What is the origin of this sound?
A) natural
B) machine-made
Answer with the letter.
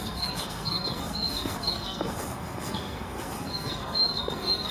B